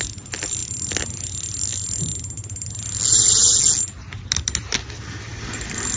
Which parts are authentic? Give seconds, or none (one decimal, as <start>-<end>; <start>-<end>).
0.0-6.0